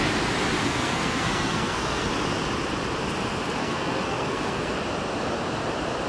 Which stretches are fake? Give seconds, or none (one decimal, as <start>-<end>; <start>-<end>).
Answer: 0.6-2.1; 3.6-4.7